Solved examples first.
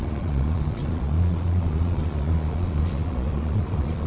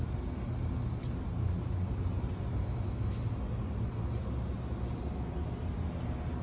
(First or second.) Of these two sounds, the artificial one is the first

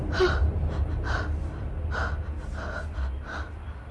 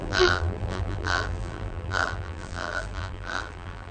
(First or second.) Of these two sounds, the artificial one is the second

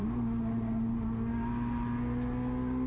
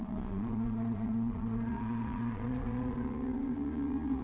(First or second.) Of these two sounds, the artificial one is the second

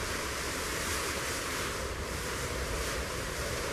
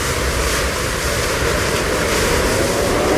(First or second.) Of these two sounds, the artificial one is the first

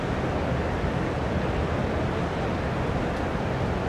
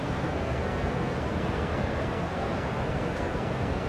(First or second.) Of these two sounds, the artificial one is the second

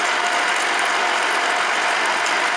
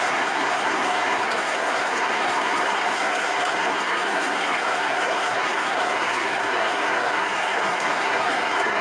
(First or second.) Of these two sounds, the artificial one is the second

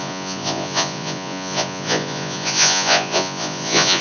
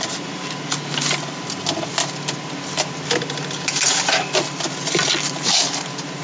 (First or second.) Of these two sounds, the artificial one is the first